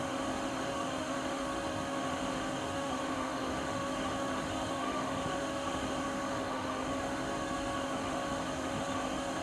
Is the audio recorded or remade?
remade